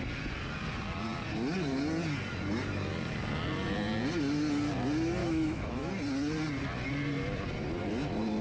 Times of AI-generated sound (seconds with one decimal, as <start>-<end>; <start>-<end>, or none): 5.2-5.9